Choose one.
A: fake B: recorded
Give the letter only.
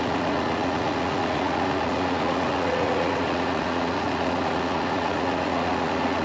A